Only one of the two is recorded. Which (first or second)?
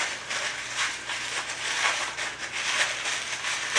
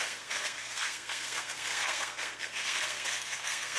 first